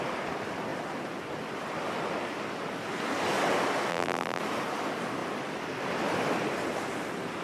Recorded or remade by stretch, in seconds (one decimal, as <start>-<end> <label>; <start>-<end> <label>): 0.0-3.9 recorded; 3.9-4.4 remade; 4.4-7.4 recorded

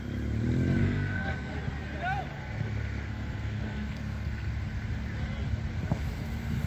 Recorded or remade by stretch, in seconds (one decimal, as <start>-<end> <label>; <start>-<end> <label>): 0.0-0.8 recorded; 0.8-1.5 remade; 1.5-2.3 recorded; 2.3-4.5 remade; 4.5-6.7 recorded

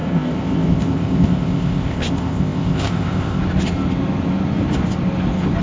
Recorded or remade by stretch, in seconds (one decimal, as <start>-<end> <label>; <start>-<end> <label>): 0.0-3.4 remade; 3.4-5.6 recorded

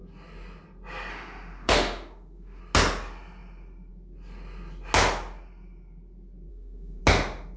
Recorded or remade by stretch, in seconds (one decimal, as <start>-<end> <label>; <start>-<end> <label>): 0.0-1.1 recorded; 1.1-2.6 remade; 2.6-6.5 recorded; 6.5-7.0 remade; 7.0-7.6 recorded